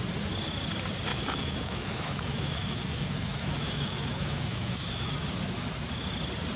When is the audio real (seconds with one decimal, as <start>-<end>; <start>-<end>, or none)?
0.0-1.1; 5.1-6.6